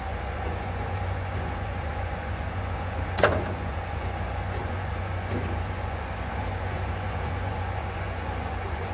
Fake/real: fake